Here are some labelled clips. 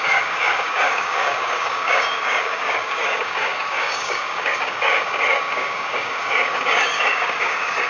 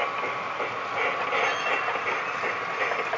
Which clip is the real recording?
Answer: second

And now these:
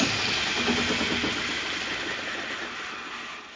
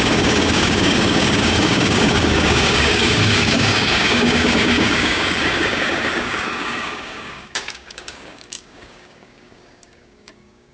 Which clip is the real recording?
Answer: first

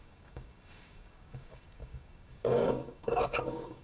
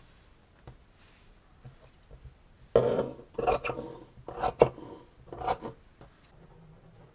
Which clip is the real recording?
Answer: second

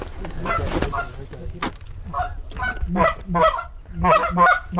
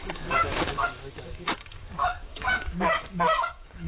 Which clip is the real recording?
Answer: first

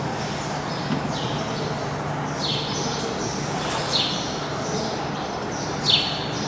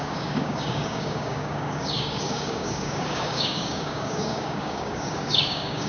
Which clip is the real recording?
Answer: first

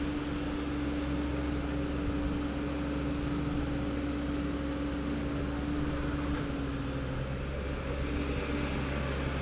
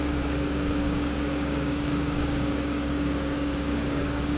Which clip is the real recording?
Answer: first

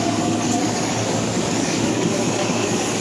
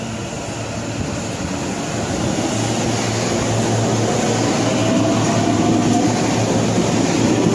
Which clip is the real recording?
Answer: second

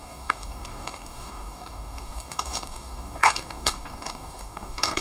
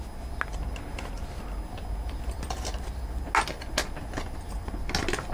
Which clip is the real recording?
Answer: second